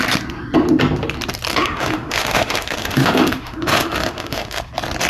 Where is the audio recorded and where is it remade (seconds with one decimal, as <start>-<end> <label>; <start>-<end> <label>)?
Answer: 0.0-1.5 recorded; 1.5-4.6 remade; 4.6-5.1 recorded